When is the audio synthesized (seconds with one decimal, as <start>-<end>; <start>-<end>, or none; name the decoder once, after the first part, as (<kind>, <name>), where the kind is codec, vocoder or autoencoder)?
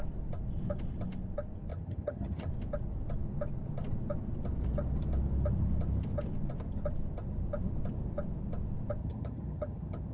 1.7-2.5 (vocoder, HiFi-GAN); 9.0-10.1